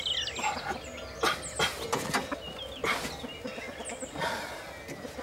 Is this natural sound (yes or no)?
yes